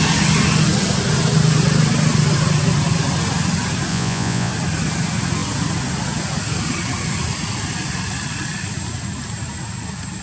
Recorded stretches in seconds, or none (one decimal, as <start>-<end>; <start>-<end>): 0.0-3.9; 4.5-10.2